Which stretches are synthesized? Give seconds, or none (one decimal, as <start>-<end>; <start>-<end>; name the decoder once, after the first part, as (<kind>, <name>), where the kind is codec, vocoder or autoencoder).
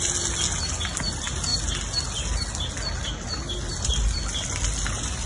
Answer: none